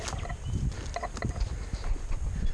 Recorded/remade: recorded